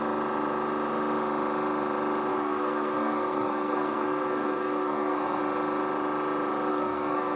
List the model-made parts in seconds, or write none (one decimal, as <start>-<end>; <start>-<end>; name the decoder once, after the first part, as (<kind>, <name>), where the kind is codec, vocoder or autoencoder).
2.3-5.4 (codec, SNAC); 6.7-7.4